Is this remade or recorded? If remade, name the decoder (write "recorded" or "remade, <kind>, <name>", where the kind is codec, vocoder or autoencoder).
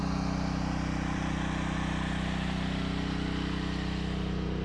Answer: recorded